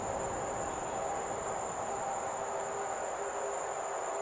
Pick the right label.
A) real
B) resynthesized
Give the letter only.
A